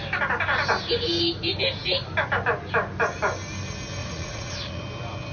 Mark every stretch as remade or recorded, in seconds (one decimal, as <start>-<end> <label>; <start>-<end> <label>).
0.0-4.0 recorded; 4.0-4.8 remade; 4.8-5.3 recorded